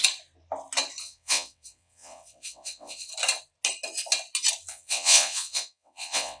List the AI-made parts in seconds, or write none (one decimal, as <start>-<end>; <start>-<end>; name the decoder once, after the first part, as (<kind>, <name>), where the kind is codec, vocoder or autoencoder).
1.0-3.1 (vocoder, WaveNeXt); 4.7-6.4

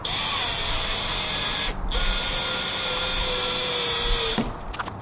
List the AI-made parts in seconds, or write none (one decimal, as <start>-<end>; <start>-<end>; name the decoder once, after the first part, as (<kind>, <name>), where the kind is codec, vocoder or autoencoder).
0.0-1.9 (vocoder, BigVGAN v2)

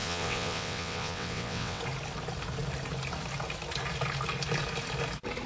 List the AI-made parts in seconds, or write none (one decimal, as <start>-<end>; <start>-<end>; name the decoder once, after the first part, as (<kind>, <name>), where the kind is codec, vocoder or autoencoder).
0.0-1.8 (vocoder, WaveNeXt)

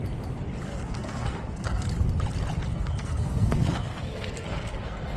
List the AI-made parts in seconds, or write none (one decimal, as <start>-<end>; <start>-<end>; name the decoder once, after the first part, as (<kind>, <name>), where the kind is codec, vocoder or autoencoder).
0.7-1.9 (codec, SNAC); 2.7-5.2

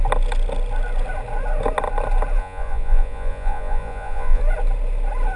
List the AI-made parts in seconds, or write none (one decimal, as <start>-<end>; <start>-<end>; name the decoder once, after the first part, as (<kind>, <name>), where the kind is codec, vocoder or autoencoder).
2.4-4.4 (vocoder, Vocos)

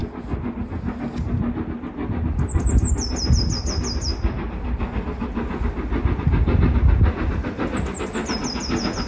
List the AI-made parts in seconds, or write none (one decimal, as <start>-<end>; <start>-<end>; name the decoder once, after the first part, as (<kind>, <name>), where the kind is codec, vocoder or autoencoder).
none

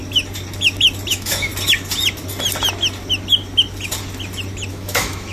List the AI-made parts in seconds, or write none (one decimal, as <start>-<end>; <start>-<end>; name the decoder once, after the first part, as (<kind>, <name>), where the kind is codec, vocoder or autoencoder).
1.1-1.5 (autoencoder, DAC-VAE); 4.7-5.3

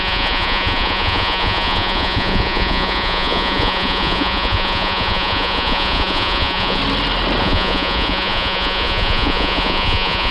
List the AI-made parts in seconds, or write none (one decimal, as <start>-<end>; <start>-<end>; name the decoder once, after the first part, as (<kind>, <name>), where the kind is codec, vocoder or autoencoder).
0.0-6.8 (vocoder, Vocos); 7.4-10.3